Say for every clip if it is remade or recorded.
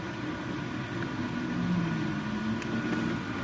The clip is recorded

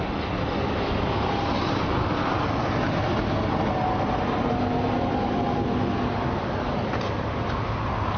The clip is recorded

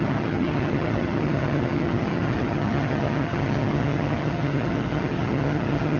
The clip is remade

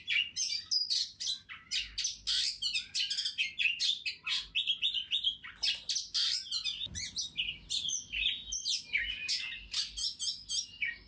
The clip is recorded